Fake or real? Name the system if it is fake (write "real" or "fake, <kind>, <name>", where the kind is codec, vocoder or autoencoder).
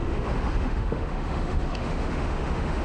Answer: fake, autoencoder, DAC-VAE